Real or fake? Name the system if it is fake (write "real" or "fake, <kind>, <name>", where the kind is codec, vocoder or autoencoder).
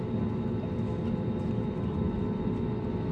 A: real